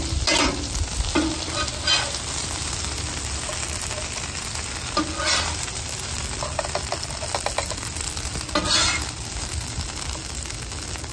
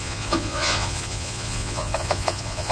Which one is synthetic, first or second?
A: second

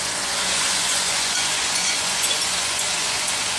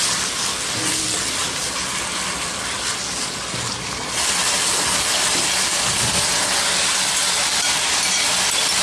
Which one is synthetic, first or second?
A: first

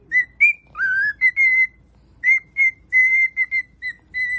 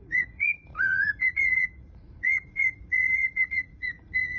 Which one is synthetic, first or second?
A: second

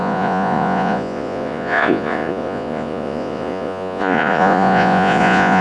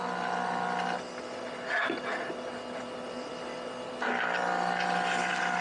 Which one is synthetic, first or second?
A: first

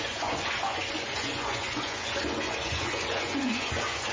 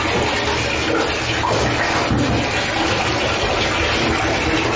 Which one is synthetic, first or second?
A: first